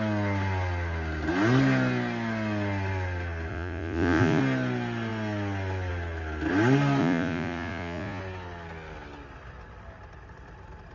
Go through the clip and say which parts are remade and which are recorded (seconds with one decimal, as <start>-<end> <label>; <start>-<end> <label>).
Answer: 0.0-3.5 recorded; 3.5-4.4 remade; 4.4-7.0 recorded; 7.0-8.2 remade; 8.2-10.9 recorded